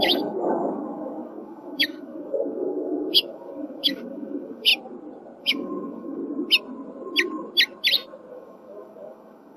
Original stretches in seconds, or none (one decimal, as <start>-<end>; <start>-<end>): 4.7-5.4; 6.2-8.3